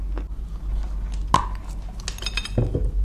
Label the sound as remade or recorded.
recorded